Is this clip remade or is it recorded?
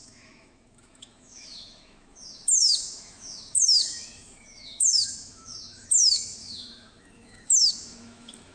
remade